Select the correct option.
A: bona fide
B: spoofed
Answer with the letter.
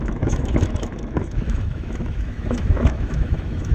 B